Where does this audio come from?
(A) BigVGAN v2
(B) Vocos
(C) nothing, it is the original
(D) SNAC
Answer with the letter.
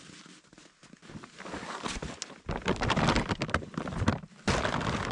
C